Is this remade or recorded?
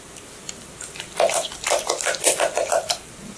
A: recorded